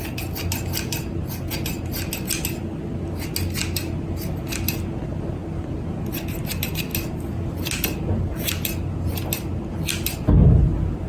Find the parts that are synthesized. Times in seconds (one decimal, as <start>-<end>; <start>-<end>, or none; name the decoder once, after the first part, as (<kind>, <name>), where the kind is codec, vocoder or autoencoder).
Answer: none